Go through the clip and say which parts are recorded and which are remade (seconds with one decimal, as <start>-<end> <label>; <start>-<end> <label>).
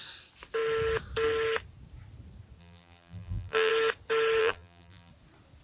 0.0-2.6 recorded; 2.6-3.7 remade; 3.7-4.4 recorded; 4.4-5.1 remade; 5.1-5.6 recorded